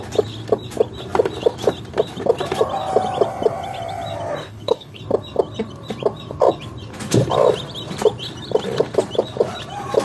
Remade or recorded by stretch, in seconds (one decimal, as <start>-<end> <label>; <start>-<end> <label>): 0.0-4.4 recorded; 4.4-5.0 remade; 5.0-10.0 recorded